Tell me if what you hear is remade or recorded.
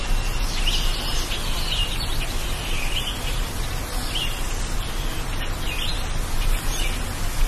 recorded